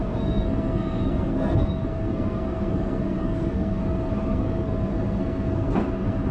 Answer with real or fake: fake